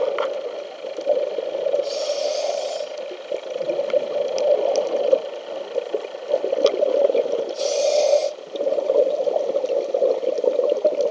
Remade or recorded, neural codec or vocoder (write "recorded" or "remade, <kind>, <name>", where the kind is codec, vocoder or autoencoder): recorded